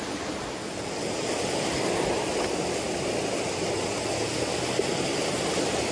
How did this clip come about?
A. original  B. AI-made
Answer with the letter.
A